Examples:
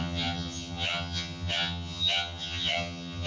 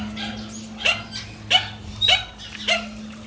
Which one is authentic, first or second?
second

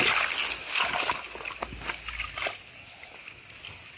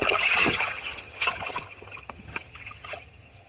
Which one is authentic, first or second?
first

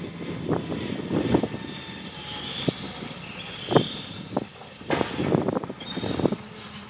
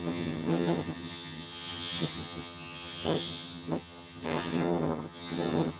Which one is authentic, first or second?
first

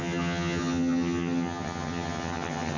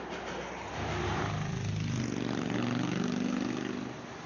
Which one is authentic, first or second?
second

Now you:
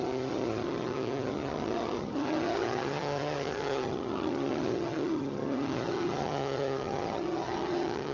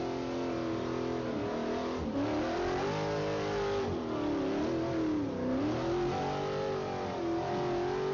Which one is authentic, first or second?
second